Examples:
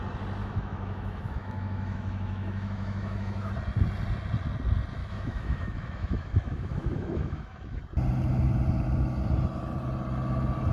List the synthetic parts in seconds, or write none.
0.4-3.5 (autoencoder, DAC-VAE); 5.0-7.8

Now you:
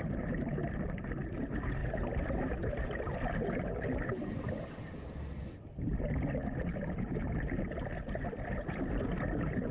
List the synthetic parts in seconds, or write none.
none

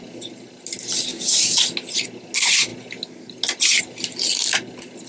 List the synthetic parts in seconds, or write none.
1.1-1.6 (codec, DAC)

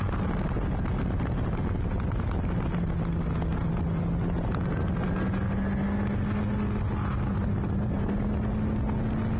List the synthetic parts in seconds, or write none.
7.4-8.2 (vocoder, BigVGAN v2)

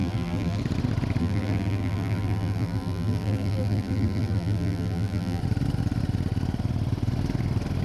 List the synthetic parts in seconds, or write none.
0.0-0.6 (vocoder, BigVGAN v2); 1.2-5.4

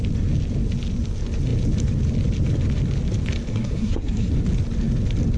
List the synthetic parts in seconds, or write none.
3.5-4.3 (codec, SNAC)

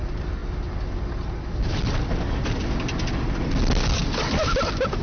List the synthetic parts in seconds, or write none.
0.0-0.4 (vocoder, BigVGAN v2); 1.5-2.6; 4.0-5.0